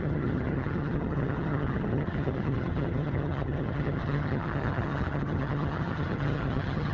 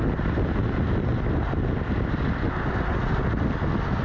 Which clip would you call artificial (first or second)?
first